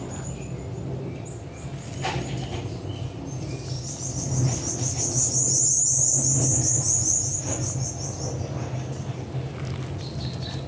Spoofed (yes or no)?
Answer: no